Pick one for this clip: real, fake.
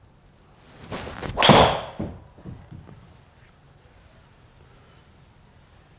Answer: real